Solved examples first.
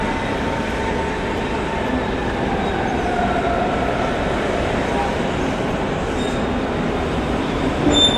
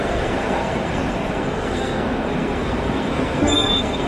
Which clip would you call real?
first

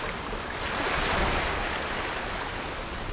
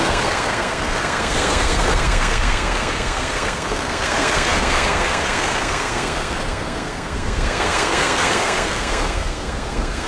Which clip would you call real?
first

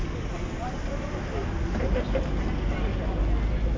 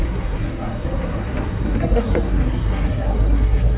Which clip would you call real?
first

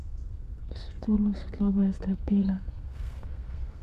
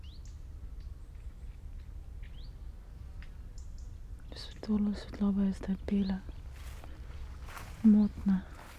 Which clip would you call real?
second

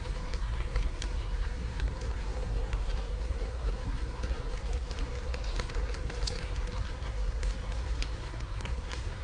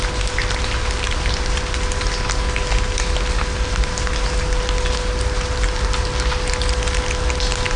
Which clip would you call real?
second